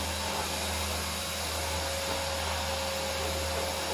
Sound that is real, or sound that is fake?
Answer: real